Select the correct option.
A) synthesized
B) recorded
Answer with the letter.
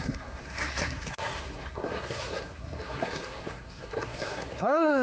A